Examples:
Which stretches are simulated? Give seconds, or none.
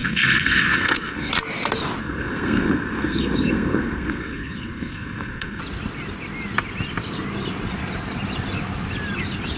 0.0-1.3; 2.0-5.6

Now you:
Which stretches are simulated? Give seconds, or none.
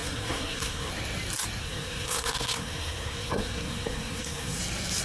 0.0-0.9; 1.6-4.6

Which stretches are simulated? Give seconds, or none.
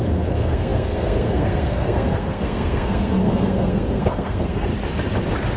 0.0-4.7